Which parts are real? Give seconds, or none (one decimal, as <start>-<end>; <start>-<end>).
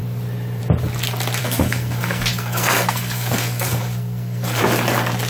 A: 0.0-1.4; 4.6-5.3